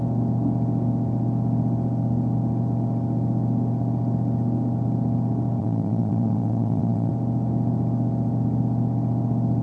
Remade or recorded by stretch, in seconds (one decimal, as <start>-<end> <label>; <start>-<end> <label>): 0.0-5.6 recorded; 5.6-7.1 remade; 7.1-9.6 recorded